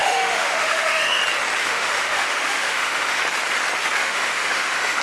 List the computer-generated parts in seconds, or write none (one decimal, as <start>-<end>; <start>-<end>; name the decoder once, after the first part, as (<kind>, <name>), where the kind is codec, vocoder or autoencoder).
0.0-1.2 (autoencoder, DAC-VAE); 1.6-3.2; 4.0-5.0